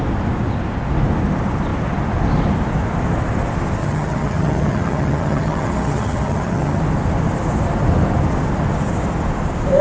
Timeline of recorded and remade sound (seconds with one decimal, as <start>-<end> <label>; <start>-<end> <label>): 0.0-3.8 recorded; 3.8-6.8 remade; 6.8-9.8 recorded